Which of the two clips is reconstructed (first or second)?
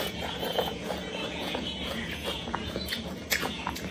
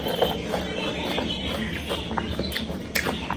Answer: first